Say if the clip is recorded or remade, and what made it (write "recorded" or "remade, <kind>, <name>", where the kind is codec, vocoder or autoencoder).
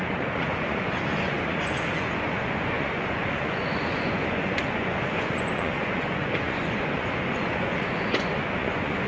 remade, vocoder, Vocos